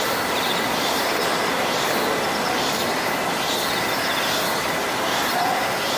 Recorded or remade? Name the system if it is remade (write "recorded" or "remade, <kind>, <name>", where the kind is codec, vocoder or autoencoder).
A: recorded